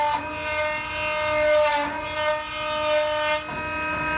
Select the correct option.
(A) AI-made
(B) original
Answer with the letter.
B